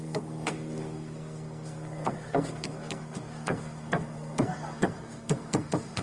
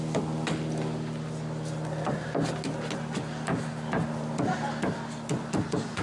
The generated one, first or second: first